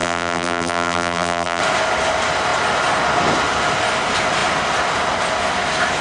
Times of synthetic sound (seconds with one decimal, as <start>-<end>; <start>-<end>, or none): 0.0-1.6